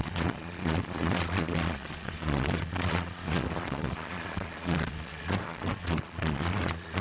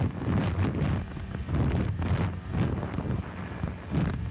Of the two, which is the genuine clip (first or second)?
second